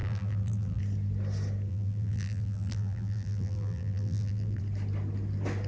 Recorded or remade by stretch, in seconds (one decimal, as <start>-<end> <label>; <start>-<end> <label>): 0.0-0.8 remade; 0.8-1.7 recorded; 1.7-4.6 remade; 4.6-5.7 recorded